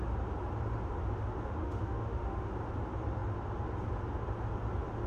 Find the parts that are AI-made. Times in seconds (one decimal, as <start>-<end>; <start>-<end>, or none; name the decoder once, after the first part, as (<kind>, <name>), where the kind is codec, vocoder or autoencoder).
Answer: 1.6-2.5 (autoencoder, DAC-VAE)